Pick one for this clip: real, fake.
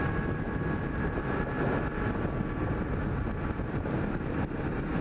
real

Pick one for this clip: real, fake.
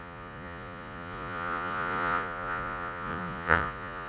fake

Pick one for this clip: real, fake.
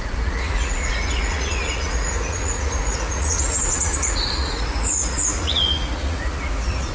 fake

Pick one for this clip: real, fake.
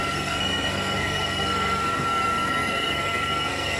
fake